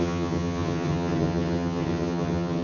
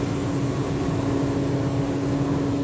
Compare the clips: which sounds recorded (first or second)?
second